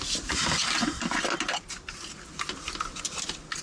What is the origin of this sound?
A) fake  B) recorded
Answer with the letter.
B